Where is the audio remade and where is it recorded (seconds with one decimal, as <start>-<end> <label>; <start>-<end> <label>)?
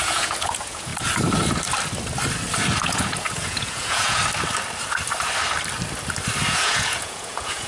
0.0-0.9 remade; 0.9-2.8 recorded; 2.8-4.2 remade; 4.2-6.5 recorded; 6.5-7.7 remade